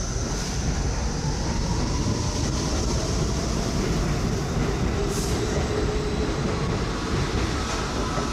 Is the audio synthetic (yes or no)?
no